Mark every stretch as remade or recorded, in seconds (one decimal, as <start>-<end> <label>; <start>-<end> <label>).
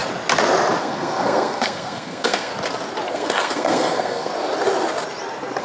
0.0-0.8 recorded; 0.8-2.5 remade; 2.5-3.1 recorded; 3.1-4.3 remade; 4.3-5.6 recorded